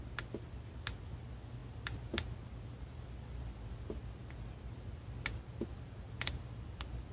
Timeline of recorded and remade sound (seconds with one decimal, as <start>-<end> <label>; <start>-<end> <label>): 0.0-7.1 recorded